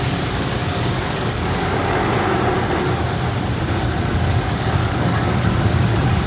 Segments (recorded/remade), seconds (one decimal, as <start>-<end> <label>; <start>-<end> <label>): 0.0-2.1 remade; 2.1-4.0 recorded; 4.0-6.3 remade